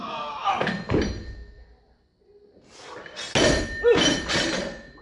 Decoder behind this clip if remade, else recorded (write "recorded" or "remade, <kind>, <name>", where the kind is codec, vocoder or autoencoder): recorded